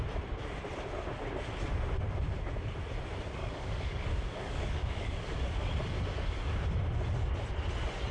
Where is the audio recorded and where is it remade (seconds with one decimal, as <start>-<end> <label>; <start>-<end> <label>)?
0.0-3.4 recorded; 3.4-5.7 remade; 5.7-8.1 recorded